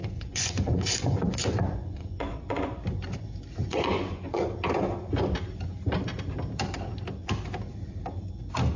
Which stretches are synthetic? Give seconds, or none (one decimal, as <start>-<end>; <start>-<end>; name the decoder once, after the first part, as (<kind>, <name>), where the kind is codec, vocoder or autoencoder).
0.0-2.8 (vocoder, Vocos); 3.6-4.5